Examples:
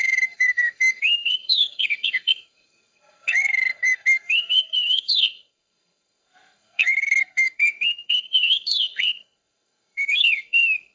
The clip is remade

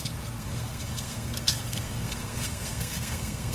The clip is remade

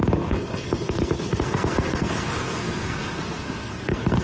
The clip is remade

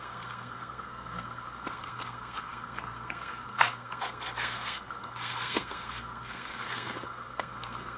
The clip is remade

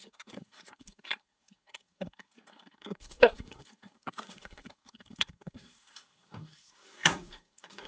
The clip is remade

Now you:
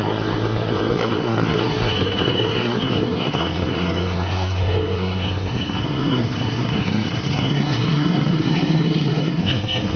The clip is remade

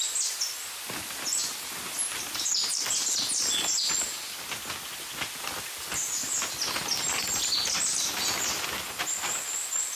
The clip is recorded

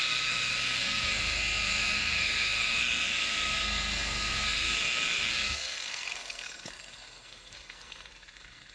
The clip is remade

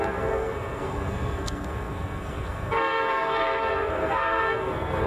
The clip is remade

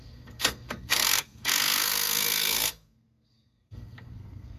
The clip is remade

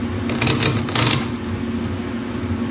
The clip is recorded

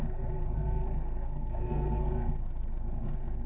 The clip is remade